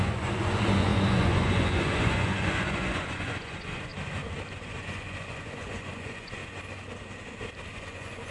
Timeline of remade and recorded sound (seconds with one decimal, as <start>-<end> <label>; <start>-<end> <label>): 0.0-3.9 remade; 3.9-4.5 recorded; 4.5-6.4 remade; 6.4-7.7 recorded; 7.7-8.3 remade